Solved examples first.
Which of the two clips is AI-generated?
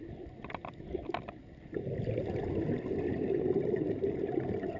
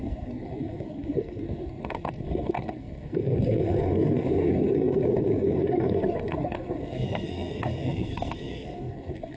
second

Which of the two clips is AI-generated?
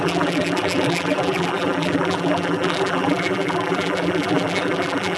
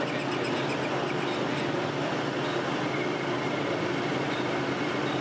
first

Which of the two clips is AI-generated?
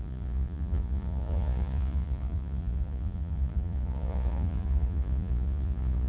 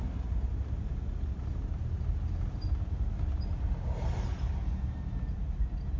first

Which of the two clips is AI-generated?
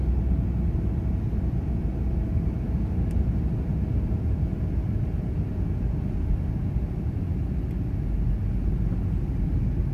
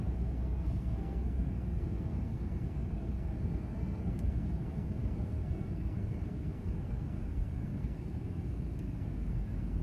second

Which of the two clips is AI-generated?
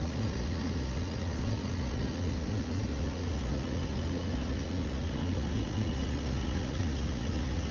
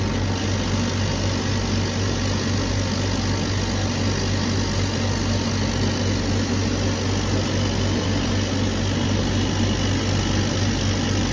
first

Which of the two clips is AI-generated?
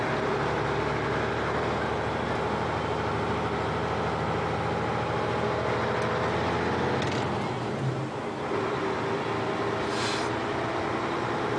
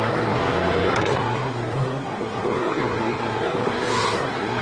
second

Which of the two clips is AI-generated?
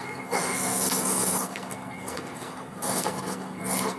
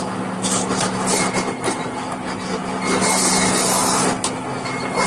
first